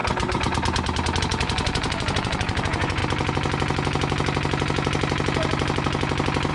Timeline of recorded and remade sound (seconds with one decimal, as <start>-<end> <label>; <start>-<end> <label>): 0.0-1.2 recorded; 1.2-3.0 remade; 3.0-6.5 recorded